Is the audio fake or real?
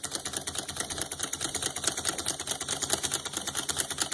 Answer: real